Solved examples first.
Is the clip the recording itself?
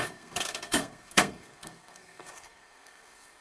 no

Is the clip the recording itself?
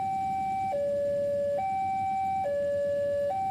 yes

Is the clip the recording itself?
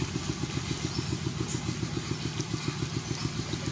yes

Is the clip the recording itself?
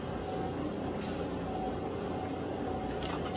yes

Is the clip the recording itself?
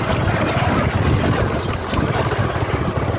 yes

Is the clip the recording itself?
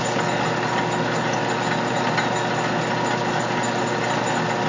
yes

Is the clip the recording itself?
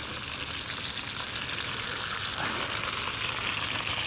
yes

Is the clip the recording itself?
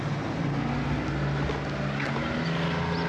yes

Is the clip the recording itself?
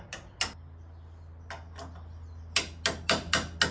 yes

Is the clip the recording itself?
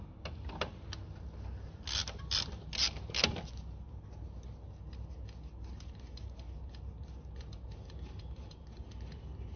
yes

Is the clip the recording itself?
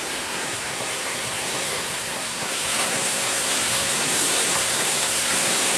no